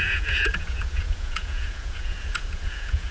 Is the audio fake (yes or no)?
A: yes